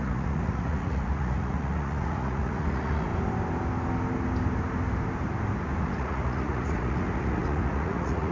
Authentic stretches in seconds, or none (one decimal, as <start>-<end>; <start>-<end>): 3.1-5.8